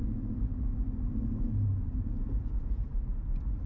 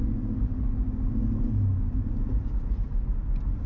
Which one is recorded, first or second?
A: second